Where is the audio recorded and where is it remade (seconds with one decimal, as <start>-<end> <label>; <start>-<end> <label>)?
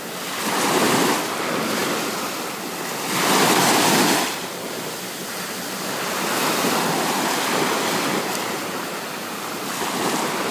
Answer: 0.0-10.5 recorded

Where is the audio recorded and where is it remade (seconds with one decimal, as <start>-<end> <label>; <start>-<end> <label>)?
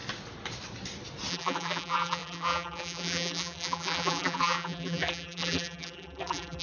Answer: 0.0-1.3 recorded; 1.3-6.6 remade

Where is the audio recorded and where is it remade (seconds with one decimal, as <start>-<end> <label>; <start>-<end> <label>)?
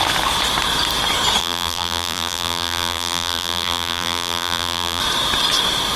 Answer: 0.0-1.4 recorded; 1.4-5.0 remade; 5.0-6.0 recorded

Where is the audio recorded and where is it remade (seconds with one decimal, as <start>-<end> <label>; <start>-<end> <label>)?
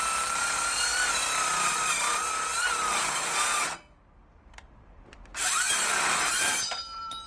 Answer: 0.0-7.3 remade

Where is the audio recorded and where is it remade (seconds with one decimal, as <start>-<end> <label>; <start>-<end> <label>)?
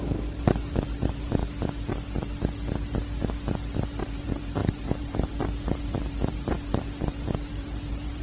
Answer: 0.0-1.4 remade; 1.4-4.0 recorded; 4.0-8.2 remade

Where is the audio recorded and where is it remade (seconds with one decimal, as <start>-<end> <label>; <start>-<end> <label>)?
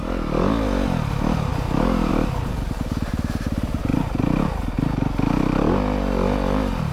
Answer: 0.0-3.9 recorded; 3.9-4.5 remade; 4.5-6.9 recorded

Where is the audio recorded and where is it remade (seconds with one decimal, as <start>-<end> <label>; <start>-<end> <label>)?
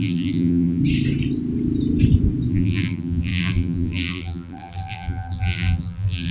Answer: 0.0-0.8 remade; 0.8-2.5 recorded; 2.5-6.3 remade